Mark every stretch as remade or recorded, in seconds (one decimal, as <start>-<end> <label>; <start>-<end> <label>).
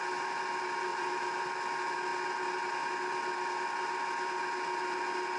0.0-0.9 recorded; 0.9-1.4 remade; 1.4-5.4 recorded